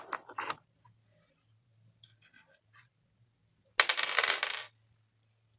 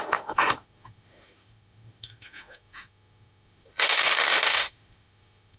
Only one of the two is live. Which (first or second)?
first